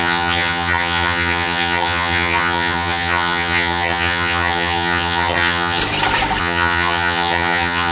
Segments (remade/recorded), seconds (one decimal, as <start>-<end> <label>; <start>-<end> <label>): 0.0-5.8 remade; 5.8-6.4 recorded; 6.4-7.9 remade